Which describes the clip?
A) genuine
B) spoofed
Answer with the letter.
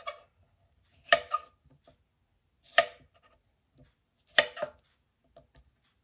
A